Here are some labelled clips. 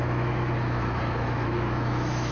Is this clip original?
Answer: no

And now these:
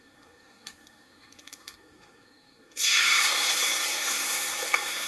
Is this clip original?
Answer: no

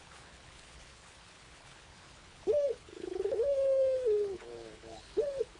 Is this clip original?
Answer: no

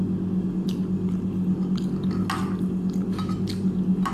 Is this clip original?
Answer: yes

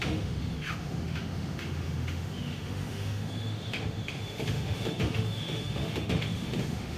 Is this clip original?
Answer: no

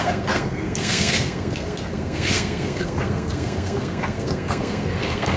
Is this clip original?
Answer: no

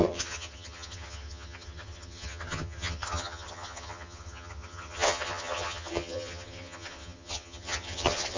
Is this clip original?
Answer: no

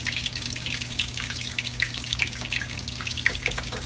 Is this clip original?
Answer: no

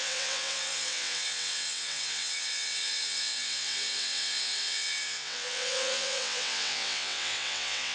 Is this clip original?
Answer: no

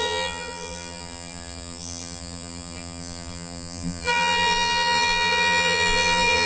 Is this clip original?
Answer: no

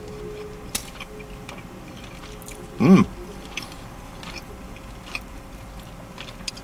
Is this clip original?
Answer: yes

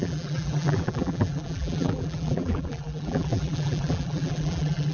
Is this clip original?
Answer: no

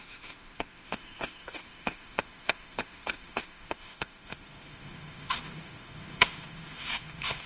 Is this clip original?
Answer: no